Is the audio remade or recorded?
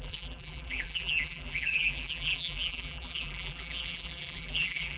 remade